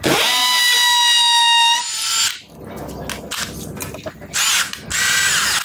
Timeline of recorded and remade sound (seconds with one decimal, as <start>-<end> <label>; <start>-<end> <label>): 0.0-5.6 recorded